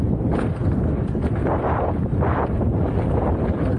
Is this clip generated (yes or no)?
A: no